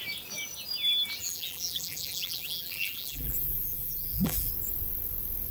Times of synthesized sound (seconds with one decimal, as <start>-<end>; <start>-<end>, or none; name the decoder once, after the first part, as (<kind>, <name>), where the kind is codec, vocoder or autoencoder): 1.2-4.5 (vocoder, BigVGAN v2)